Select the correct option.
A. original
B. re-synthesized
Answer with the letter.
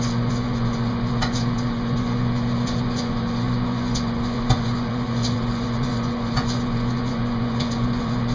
B